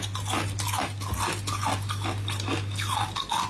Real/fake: real